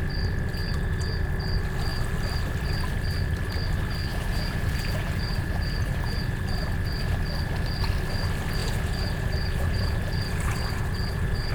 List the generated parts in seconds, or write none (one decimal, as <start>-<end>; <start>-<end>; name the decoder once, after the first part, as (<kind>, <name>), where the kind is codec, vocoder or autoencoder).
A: 0.6-1.2 (vocoder, Vocos); 4.1-6.4; 8.6-11.5